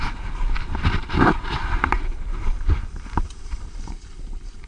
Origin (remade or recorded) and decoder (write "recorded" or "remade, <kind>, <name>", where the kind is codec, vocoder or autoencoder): remade, vocoder, BigVGAN v2